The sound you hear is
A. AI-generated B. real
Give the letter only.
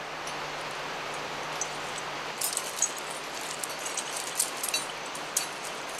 A